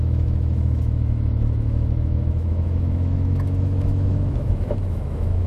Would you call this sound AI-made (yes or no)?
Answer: yes